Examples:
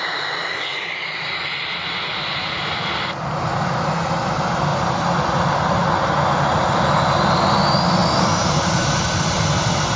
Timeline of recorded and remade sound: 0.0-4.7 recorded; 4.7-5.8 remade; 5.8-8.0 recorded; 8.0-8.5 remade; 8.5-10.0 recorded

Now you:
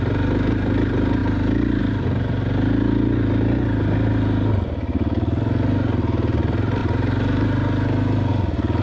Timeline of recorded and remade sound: 0.0-8.8 recorded

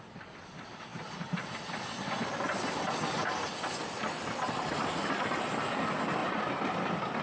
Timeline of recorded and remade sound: 0.0-3.8 recorded; 3.8-4.8 remade; 4.8-6.2 recorded; 6.2-7.2 remade

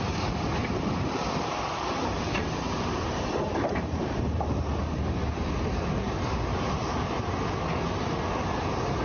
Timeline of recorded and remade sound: 0.0-0.6 recorded; 0.6-4.2 remade; 4.2-9.0 recorded

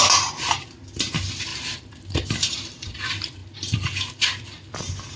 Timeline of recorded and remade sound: 0.0-1.5 recorded; 1.5-2.9 remade; 2.9-3.4 recorded; 3.4-4.2 remade; 4.2-5.2 recorded

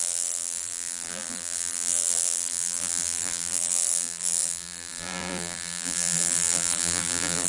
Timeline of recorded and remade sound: 0.0-7.5 remade

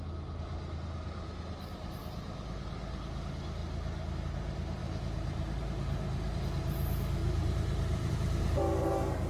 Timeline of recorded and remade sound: 0.0-7.2 recorded; 7.2-8.1 remade; 8.1-9.3 recorded